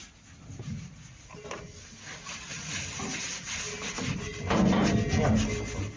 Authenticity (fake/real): real